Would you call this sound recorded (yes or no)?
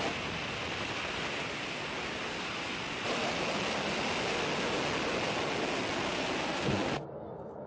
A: yes